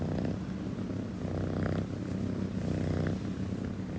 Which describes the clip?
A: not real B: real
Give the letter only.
B